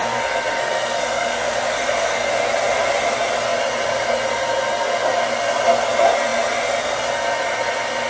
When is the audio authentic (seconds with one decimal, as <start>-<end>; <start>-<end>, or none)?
2.3-8.1

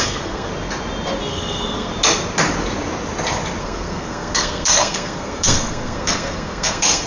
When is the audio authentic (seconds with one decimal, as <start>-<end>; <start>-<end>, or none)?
0.5-1.3; 1.9-3.6

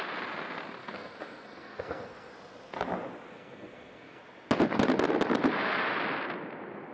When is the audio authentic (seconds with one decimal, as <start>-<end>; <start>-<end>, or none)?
0.0-0.8; 2.3-3.3; 4.2-6.9